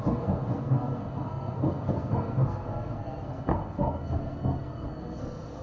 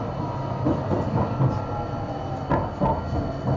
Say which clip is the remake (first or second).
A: first